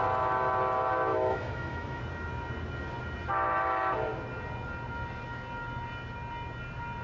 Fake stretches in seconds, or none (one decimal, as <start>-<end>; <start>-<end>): 1.1-2.0